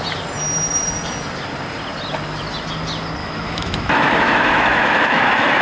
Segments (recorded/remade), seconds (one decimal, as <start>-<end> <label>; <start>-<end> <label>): 0.0-3.2 recorded; 3.2-5.6 remade